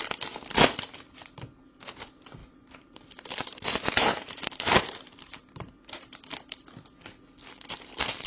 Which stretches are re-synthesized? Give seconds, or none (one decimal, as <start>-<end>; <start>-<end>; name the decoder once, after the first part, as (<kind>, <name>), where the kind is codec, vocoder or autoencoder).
2.4-6.7 (vocoder, BigVGAN v2)